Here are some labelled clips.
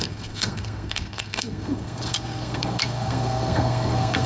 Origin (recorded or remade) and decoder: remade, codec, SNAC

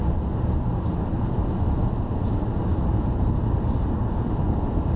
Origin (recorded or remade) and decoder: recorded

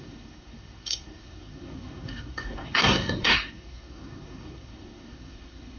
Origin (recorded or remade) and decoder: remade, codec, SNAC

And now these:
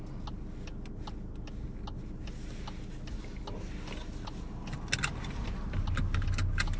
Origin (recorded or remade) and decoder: recorded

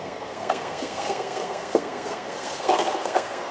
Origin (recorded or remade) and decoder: remade, codec, SNAC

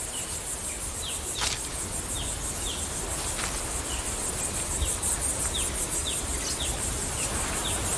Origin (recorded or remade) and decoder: recorded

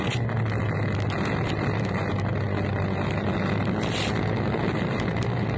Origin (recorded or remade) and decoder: recorded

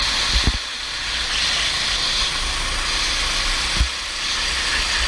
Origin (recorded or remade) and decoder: recorded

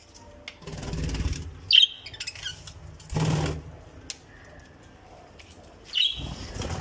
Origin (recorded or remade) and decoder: recorded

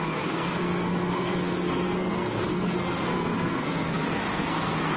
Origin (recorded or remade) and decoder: remade, codec, SNAC